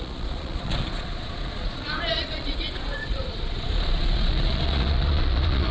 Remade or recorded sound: remade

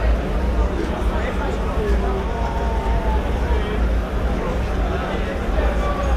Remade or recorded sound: recorded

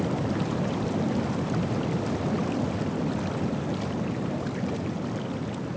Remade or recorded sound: recorded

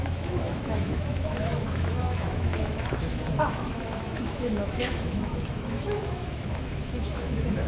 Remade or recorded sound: remade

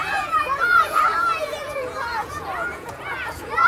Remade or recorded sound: remade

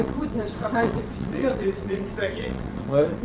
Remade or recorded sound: remade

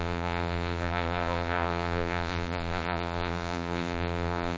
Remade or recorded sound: remade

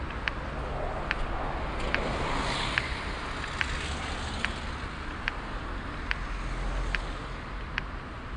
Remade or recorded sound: recorded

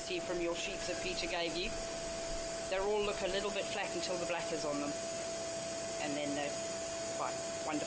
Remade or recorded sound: recorded